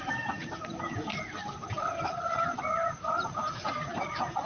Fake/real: fake